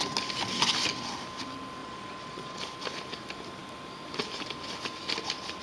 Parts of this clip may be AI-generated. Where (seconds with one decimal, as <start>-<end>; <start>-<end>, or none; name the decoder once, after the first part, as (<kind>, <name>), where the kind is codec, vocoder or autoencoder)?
1.8-2.6 (vocoder, Vocos)